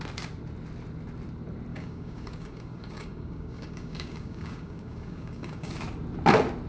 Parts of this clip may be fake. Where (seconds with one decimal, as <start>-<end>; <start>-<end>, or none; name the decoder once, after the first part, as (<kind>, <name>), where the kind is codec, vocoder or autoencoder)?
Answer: 1.7-5.7 (codec, DAC)

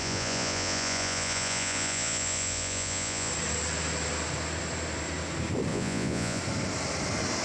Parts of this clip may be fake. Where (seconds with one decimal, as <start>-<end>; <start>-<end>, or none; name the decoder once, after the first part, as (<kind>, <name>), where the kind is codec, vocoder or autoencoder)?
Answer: 0.0-3.3 (vocoder, Vocos); 5.7-6.4

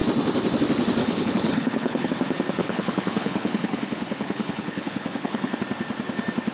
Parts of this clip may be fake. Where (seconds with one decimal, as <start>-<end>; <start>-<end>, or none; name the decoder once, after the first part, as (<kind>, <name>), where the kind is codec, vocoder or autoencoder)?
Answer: 1.0-2.1 (codec, HILCodec); 2.6-5.6

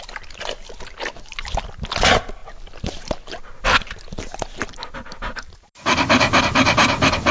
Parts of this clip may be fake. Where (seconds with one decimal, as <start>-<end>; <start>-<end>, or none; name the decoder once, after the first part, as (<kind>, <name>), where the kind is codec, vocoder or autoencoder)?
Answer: none

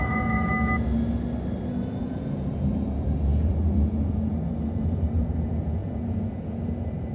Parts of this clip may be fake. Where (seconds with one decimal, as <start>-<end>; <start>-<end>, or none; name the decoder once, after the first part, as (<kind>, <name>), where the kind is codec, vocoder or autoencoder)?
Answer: 0.0-0.5 (vocoder, Vocos); 1.9-7.1

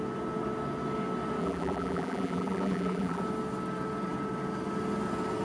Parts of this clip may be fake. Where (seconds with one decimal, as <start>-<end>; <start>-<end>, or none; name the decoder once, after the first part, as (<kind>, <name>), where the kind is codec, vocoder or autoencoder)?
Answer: 1.4-3.2 (vocoder, BigVGAN v2)

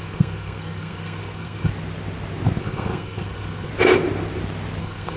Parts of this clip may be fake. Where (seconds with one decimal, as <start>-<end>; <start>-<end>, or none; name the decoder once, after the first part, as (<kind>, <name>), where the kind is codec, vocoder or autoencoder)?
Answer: 0.0-1.7 (codec, SNAC); 2.6-3.7; 4.8-5.2